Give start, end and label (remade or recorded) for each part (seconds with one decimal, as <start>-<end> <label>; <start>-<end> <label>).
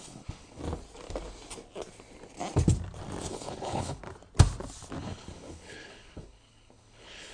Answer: 0.0-0.6 remade; 0.6-3.3 recorded; 3.3-4.0 remade; 4.0-5.0 recorded; 5.0-7.3 remade